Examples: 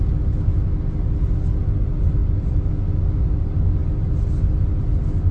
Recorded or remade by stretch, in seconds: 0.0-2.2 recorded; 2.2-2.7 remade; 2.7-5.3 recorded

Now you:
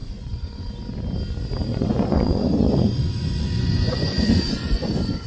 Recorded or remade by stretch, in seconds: 0.0-0.7 remade; 0.7-1.7 recorded; 1.7-5.3 remade

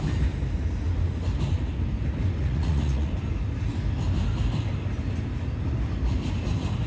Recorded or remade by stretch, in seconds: 0.0-2.4 recorded; 2.4-3.1 remade; 3.1-6.9 recorded

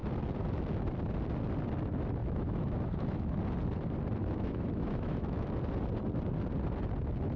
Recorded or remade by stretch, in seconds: 0.0-2.2 recorded; 2.2-3.4 remade; 3.4-4.2 recorded; 4.2-5.6 remade; 5.6-7.4 recorded

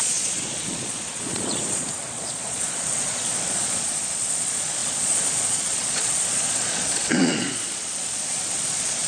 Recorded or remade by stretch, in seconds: 0.0-9.1 remade

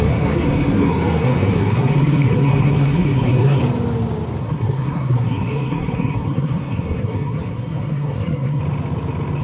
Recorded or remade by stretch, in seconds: 0.0-3.6 remade; 3.6-4.4 recorded; 4.4-8.6 remade; 8.6-9.4 recorded

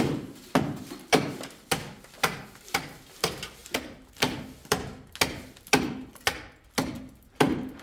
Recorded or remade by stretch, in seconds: 0.0-3.6 recorded; 3.6-5.1 remade; 5.1-7.8 recorded